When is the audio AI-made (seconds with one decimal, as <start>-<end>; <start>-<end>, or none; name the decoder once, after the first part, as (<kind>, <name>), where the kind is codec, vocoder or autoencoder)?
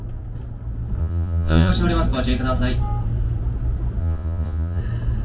1.0-1.7 (vocoder, Vocos); 4.0-4.8